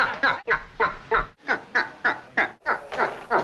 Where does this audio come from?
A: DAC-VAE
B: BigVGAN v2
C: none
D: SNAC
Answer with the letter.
C